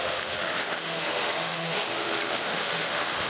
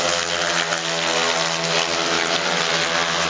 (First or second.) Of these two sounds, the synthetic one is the first